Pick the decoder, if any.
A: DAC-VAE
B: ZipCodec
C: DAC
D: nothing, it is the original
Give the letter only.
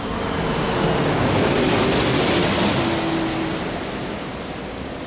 D